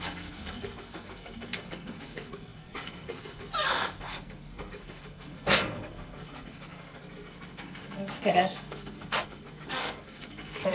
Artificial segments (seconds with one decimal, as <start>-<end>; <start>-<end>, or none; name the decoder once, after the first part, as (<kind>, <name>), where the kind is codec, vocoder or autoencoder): 0.0-10.7 (codec, SNAC)